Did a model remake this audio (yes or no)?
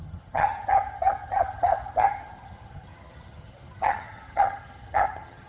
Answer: yes